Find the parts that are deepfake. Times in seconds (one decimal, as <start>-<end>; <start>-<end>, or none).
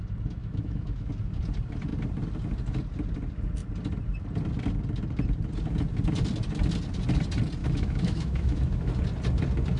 0.4-1.1; 7.6-8.9